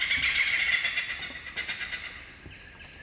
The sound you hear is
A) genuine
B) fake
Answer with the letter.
A